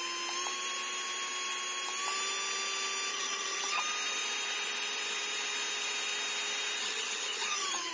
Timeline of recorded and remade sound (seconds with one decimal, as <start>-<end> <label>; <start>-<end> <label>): 0.0-3.1 recorded; 3.1-3.8 remade; 3.8-6.8 recorded; 6.8-7.9 remade